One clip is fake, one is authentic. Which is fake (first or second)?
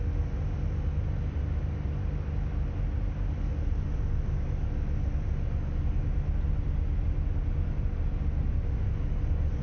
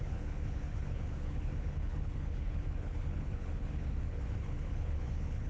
second